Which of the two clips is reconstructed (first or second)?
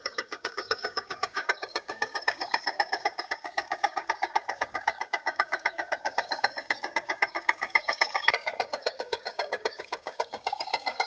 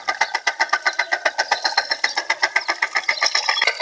first